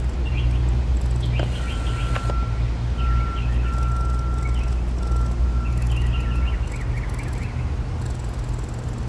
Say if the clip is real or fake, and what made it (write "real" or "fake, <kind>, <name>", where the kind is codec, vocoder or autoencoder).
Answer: real